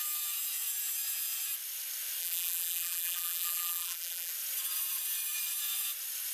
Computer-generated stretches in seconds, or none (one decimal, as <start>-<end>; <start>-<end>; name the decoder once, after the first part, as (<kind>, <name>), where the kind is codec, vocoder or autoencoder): 2.2-4.3 (vocoder, BigVGAN v2)